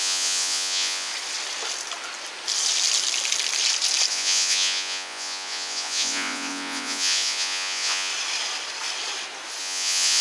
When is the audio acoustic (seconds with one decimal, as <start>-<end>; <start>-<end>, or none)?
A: 1.1-4.1; 8.1-9.6